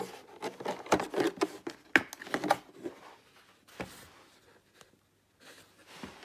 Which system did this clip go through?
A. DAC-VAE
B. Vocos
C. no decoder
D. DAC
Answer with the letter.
C